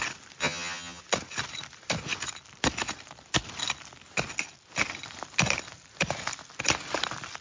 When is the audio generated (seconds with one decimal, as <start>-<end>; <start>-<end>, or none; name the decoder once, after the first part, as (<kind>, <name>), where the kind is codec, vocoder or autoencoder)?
0.4-1.0 (vocoder, HiFi-GAN)